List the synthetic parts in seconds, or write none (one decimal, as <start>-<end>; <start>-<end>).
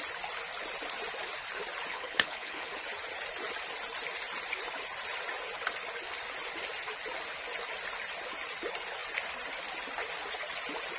1.9-2.7